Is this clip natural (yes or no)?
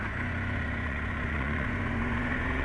no